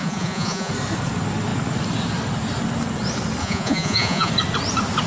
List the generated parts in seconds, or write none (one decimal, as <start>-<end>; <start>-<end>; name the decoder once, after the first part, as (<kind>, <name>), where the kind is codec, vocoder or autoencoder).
0.0-0.7 (vocoder, Vocos); 3.4-4.3